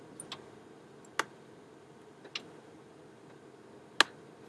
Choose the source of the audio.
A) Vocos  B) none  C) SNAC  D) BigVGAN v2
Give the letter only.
B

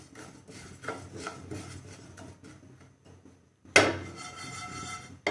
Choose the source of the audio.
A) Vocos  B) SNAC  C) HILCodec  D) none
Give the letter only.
D